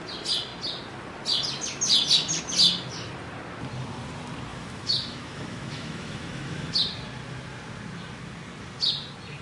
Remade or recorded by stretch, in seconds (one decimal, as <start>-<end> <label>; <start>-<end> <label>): 0.0-4.5 recorded; 4.5-6.7 remade; 6.7-9.4 recorded